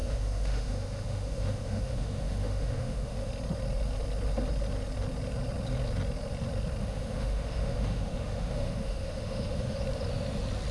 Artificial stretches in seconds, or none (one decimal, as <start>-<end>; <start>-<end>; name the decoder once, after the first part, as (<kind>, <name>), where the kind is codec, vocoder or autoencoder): 0.0-3.3 (autoencoder, DAC-VAE); 6.8-9.8